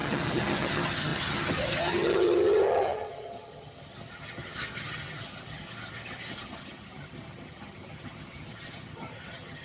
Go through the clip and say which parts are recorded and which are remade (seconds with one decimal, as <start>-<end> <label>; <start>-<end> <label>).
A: 0.0-9.6 remade